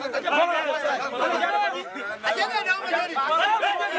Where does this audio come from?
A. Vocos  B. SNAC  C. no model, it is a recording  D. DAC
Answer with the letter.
C